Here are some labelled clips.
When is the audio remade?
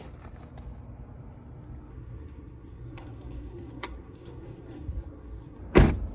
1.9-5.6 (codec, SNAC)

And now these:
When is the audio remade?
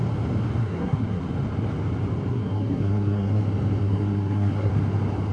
0.6-1.2 (codec, SNAC); 2.3-3.4; 3.8-4.7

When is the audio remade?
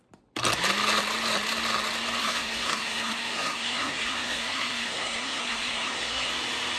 2.2-6.3 (codec, SNAC)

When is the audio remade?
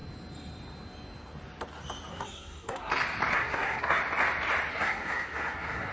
2.1-2.9 (codec, SNAC); 3.3-4.0; 4.7-5.9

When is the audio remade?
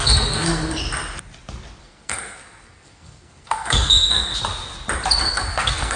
0.0-0.8 (codec, SNAC); 1.8-4.3; 5.3-6.0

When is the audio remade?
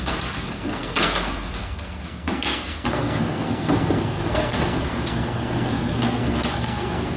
0.0-7.2 (codec, SNAC)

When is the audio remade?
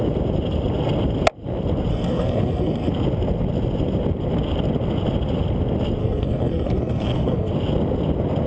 1.9-2.9 (codec, SNAC); 6.0-7.5